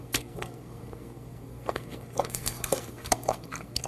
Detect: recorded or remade remade